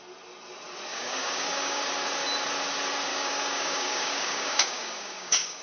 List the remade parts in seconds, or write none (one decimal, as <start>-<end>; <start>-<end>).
0.9-1.8; 3.1-5.6